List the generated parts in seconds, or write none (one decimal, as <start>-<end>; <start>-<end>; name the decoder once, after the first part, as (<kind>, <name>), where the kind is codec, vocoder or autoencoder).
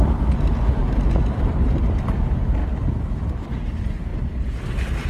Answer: none